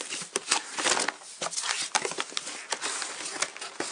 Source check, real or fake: real